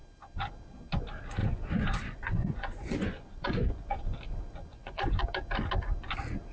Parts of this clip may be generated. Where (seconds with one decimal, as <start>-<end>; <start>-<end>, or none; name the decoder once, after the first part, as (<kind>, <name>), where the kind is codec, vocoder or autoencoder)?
1.4-4.0 (vocoder, Vocos); 4.7-5.2